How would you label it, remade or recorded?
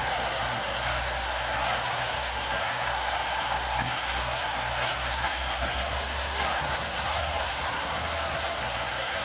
remade